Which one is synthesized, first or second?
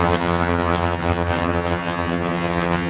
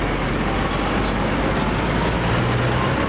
first